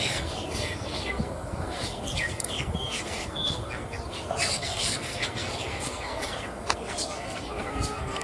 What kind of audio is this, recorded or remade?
remade